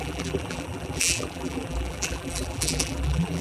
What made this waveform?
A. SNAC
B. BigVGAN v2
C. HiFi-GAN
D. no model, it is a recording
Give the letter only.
B